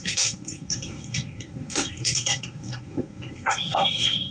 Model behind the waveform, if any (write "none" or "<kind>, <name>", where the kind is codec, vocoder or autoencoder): codec, SNAC